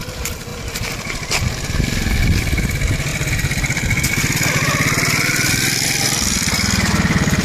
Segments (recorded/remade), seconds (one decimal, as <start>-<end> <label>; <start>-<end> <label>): 0.0-7.4 remade